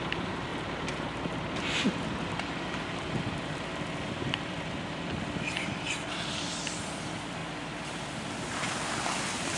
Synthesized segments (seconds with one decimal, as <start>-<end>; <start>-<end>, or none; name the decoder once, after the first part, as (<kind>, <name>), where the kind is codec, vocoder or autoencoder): 0.0-7.4 (vocoder, BigVGAN v2); 8.7-9.6